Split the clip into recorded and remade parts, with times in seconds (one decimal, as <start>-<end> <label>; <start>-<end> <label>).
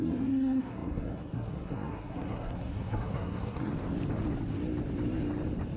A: 0.0-3.7 remade; 3.7-5.8 recorded